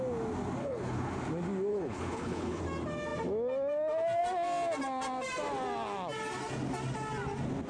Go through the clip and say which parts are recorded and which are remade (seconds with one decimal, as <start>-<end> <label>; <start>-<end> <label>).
0.0-0.6 recorded; 0.6-1.1 remade; 1.1-1.7 recorded; 1.7-2.6 remade; 2.6-7.7 recorded